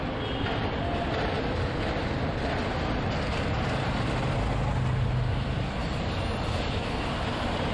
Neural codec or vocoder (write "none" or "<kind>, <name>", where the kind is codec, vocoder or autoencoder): none